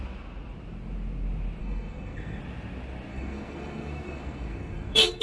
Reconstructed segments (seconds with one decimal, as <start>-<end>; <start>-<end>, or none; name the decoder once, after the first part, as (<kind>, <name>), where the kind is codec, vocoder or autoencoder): 1.6-2.4 (codec, SNAC); 3.1-5.2